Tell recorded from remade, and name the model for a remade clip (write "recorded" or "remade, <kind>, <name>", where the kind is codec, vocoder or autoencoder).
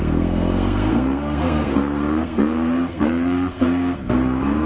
remade, codec, SNAC